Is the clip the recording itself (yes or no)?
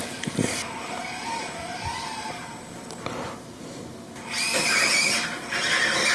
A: yes